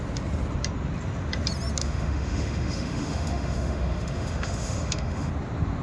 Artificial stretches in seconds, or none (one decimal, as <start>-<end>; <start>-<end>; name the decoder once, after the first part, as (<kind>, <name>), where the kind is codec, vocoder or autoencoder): 1.8-5.3 (autoencoder, DAC-VAE)